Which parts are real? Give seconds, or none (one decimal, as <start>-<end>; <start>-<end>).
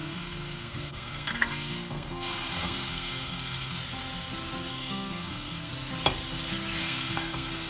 3.8-4.7; 5.7-6.8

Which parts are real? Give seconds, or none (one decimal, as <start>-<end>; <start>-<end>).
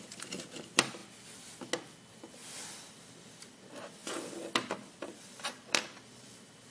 1.0-2.1; 4.0-4.9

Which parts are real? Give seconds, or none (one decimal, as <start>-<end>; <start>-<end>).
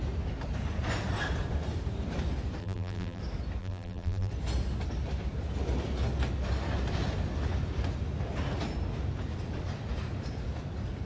0.0-2.6; 3.2-3.6; 4.3-11.1